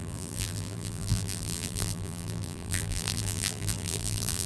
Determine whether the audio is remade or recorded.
remade